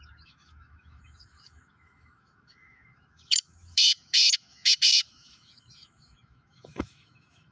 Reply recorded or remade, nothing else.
remade